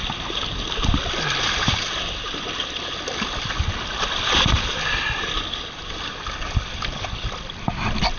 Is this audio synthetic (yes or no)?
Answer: no